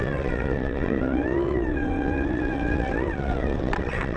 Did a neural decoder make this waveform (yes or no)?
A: yes